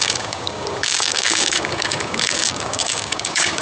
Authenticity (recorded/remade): remade